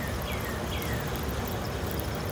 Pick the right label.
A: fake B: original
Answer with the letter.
B